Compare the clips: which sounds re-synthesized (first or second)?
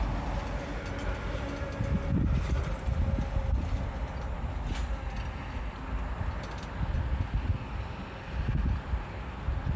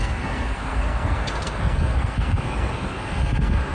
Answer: second